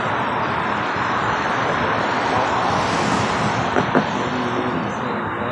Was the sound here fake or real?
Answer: real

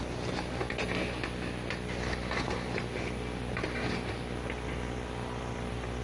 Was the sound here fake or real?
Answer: real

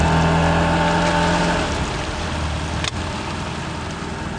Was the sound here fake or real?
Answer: real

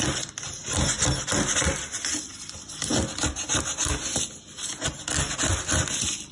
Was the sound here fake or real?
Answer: real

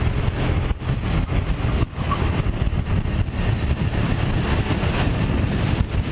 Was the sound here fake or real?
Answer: real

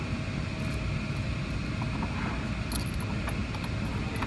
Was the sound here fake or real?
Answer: real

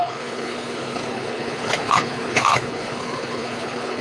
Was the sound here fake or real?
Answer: fake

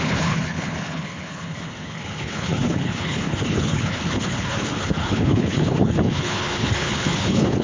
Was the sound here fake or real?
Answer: fake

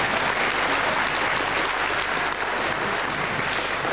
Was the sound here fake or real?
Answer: real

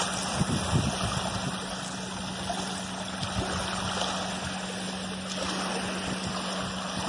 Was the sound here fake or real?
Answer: real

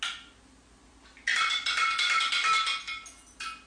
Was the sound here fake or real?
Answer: real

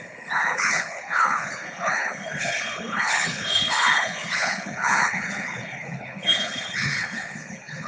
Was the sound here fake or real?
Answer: fake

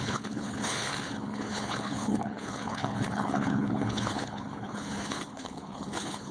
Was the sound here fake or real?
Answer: fake